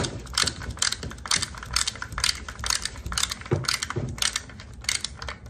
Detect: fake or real real